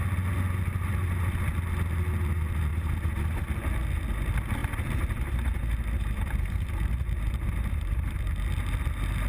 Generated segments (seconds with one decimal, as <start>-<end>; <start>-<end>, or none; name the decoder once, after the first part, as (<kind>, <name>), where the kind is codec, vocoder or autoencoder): 2.7-3.4 (vocoder, BigVGAN v2); 4.6-8.2